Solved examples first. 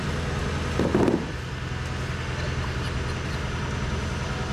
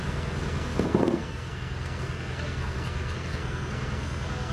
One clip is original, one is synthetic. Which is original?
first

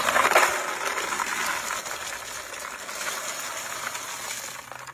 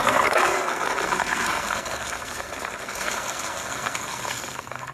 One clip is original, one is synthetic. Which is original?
first